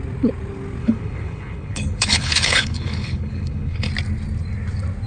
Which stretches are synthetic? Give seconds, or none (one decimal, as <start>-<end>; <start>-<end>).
0.8-3.9